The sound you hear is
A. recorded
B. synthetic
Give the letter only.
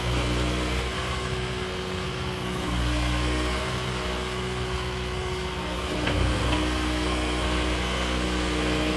B